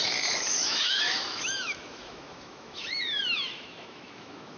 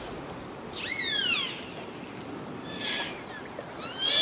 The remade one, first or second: first